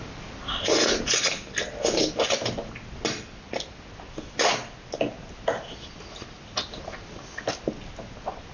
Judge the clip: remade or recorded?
recorded